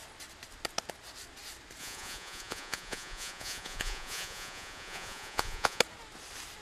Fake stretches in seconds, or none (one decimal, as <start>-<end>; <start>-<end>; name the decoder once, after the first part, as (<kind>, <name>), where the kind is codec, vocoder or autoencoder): 1.8-5.8 (vocoder, Vocos)